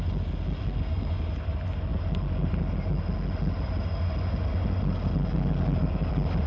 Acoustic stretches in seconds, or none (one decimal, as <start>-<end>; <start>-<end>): 0.0-0.6; 1.1-6.5